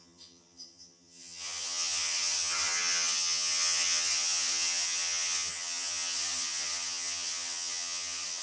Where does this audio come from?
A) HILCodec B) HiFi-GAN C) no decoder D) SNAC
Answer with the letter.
B